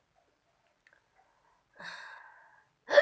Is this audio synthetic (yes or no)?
no